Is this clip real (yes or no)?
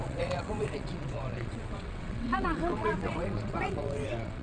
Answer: no